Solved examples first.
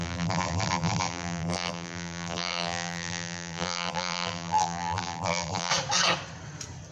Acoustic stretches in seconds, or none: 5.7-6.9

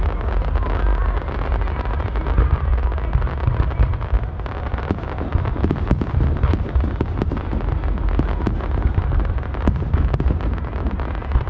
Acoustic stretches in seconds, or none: 0.0-11.5

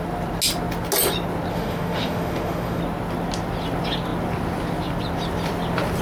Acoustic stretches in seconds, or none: 0.0-1.5; 2.8-6.0

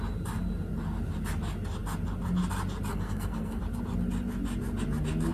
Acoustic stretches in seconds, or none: 0.0-2.9; 3.6-5.3

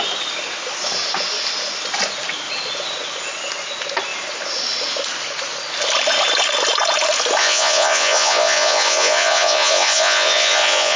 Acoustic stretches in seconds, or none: 0.0-7.4

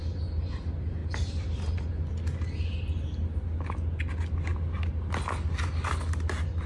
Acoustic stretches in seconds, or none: 0.0-6.7

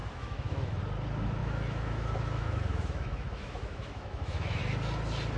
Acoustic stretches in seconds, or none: 0.8-1.4; 4.6-5.4

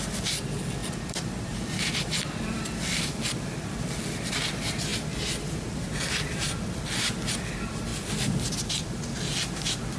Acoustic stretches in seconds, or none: 0.0-0.8; 3.0-10.0